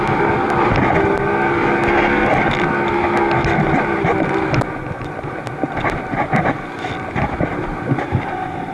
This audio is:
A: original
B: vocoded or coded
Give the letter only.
A